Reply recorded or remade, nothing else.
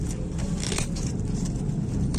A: recorded